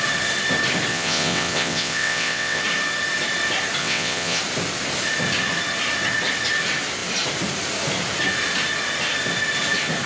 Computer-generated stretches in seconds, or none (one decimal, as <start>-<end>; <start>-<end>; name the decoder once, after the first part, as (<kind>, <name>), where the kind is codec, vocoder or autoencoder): 0.9-2.6 (vocoder, WaveNeXt); 3.8-4.4